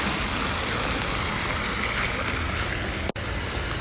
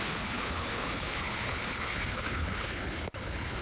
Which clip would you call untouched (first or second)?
first